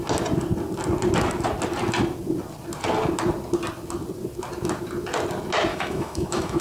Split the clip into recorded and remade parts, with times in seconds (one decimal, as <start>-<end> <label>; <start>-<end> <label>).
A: 0.0-5.7 recorded; 5.7-6.6 remade